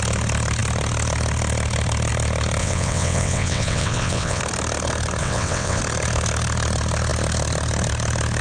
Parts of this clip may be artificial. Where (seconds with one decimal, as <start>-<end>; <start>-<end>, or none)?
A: 2.6-4.4; 5.2-5.8